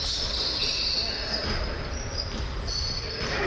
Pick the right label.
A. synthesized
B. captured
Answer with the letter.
B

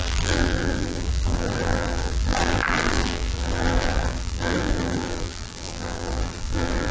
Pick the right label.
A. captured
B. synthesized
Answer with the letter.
B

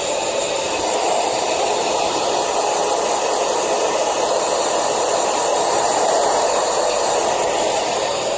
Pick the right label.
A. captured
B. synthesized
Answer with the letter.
A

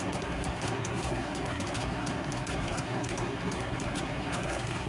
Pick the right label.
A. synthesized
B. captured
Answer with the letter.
A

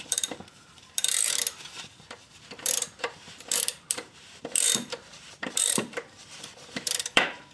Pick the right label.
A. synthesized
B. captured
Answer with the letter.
A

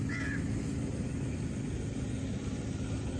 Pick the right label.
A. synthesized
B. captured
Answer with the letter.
B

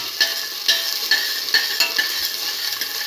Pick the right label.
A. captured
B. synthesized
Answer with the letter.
A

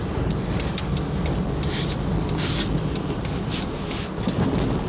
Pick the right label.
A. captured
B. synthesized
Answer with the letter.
A